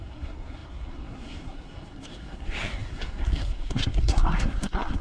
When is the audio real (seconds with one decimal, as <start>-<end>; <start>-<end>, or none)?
none